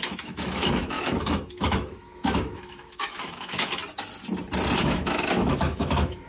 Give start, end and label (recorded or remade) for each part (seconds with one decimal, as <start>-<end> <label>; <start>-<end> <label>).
0.0-3.8 remade; 3.8-4.8 recorded; 4.8-6.3 remade